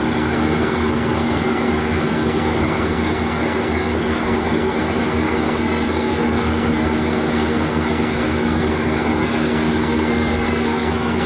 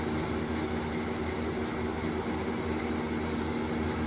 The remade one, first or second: first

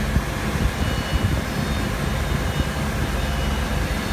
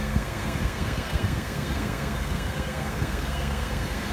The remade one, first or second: second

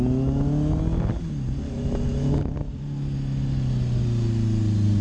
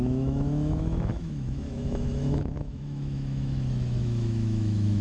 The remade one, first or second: second